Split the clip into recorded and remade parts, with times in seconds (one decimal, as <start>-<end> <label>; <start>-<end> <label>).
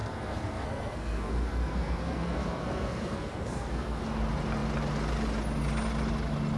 0.0-4.0 remade; 4.0-6.6 recorded